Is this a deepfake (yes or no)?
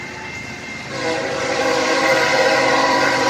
yes